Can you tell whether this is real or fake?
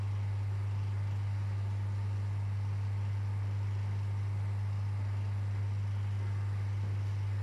real